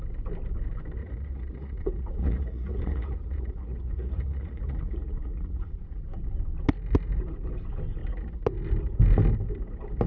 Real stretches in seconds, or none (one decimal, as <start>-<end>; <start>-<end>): 0.0-1.0; 6.0-10.1